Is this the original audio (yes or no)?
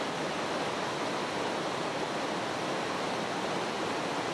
yes